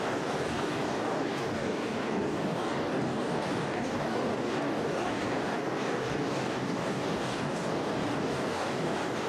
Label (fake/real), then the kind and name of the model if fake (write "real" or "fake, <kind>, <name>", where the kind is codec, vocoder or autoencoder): fake, codec, DAC